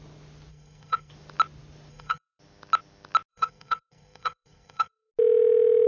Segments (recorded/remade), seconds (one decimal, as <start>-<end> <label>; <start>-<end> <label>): 0.0-0.5 recorded; 0.5-1.1 remade; 1.1-1.9 recorded; 1.9-2.4 remade; 2.4-3.3 recorded; 3.3-5.1 remade; 5.1-5.9 recorded